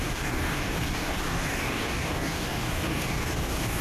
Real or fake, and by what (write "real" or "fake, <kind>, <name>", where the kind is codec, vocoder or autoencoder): fake, codec, DAC